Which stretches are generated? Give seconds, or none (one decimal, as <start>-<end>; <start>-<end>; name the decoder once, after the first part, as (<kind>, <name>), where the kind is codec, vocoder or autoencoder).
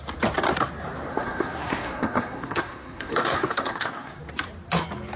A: 1.1-4.2 (codec, SNAC)